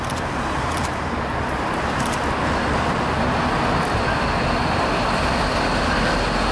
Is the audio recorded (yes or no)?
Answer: yes